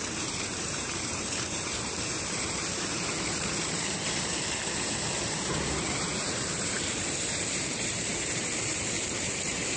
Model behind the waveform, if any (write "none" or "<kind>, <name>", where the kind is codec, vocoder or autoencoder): vocoder, BigVGAN v2